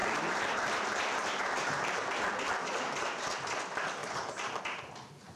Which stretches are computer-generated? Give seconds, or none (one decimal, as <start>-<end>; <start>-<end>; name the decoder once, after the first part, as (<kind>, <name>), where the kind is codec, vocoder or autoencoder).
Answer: 0.0-3.2 (vocoder, BigVGAN v2); 4.0-4.6